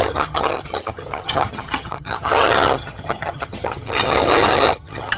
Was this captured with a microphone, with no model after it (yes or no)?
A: no